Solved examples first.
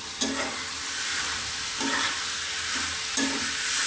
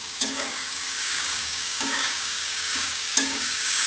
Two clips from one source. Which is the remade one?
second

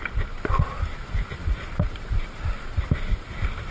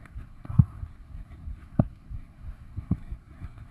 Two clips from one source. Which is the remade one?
second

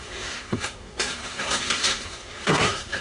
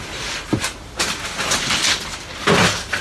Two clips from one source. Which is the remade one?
first